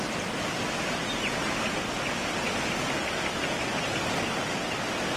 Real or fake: real